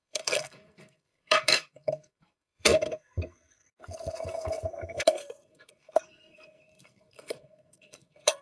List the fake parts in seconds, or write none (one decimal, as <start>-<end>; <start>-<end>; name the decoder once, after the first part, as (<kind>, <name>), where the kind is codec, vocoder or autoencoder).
0.0-8.4 (codec, SNAC)